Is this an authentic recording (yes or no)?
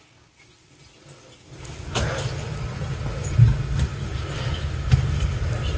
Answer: yes